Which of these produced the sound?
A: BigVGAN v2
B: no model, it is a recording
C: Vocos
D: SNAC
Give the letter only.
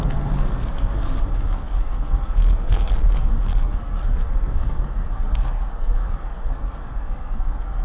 D